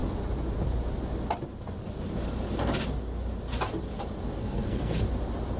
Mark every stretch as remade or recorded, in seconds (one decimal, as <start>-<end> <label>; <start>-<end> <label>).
0.0-4.4 recorded; 4.4-5.0 remade; 5.0-5.6 recorded